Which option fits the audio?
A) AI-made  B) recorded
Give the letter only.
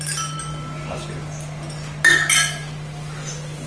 B